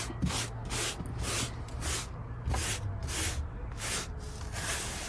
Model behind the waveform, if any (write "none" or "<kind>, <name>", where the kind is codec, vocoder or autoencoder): none